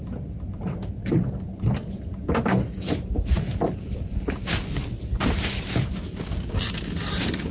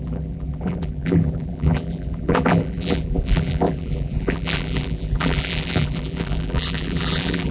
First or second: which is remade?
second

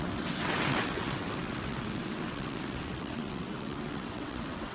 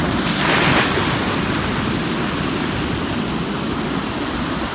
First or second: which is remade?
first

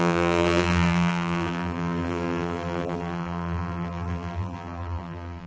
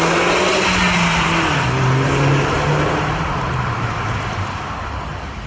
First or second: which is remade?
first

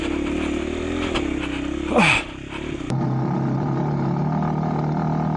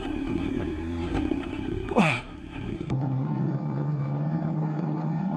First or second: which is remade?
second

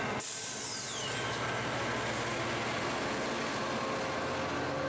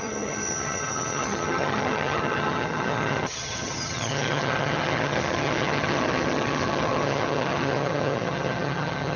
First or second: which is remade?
second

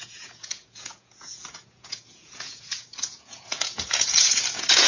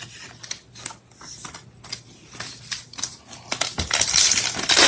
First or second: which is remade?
first